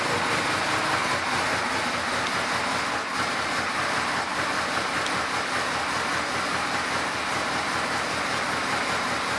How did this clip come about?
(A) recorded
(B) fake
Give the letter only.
A